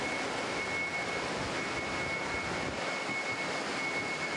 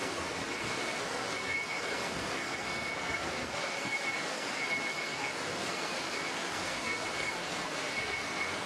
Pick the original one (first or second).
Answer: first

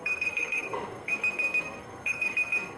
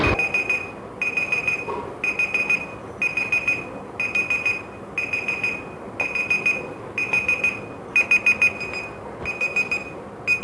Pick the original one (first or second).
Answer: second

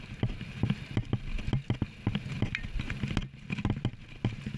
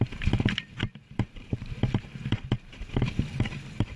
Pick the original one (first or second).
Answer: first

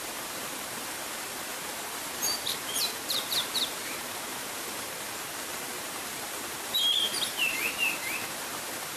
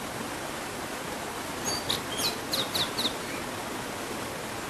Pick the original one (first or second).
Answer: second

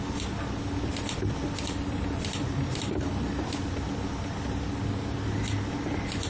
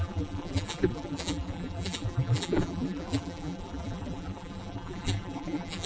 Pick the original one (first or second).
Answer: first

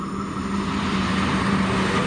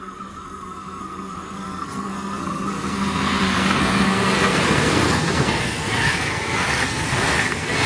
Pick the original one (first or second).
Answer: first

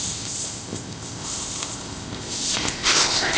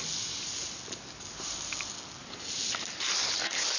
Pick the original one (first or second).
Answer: second